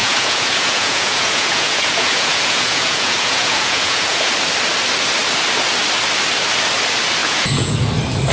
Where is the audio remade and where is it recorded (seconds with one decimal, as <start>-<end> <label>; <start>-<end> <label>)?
0.0-4.3 remade; 4.3-7.2 recorded; 7.2-7.9 remade; 7.9-8.3 recorded